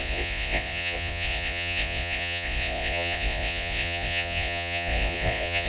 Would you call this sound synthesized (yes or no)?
yes